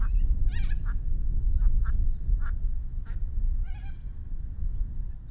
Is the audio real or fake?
real